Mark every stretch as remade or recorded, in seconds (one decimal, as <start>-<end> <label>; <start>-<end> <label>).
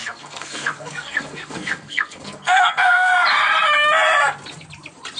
0.0-3.1 remade; 3.1-5.2 recorded